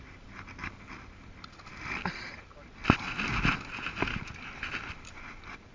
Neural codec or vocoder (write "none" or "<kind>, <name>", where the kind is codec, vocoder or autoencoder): none